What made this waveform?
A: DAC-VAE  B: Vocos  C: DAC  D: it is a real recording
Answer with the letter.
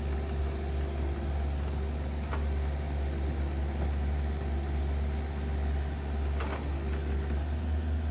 D